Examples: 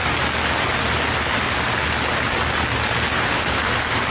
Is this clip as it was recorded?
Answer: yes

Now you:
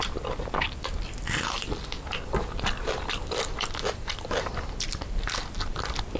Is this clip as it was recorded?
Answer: yes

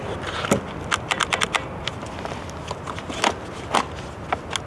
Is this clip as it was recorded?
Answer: yes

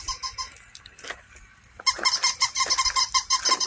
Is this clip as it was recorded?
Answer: yes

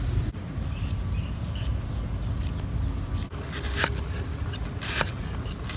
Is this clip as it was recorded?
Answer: yes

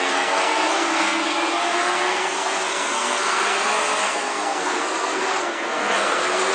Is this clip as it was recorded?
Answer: no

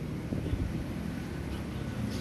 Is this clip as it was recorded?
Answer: yes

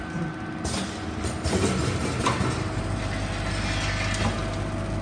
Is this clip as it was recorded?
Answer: yes